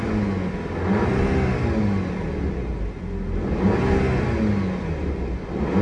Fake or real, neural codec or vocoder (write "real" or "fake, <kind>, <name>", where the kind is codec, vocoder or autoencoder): real